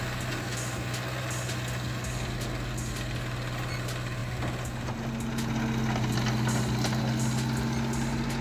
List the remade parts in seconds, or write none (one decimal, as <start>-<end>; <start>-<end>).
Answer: none